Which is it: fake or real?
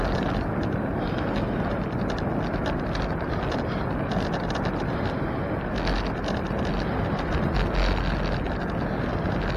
real